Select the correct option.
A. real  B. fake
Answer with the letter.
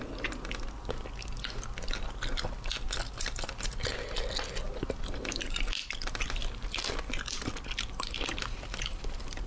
A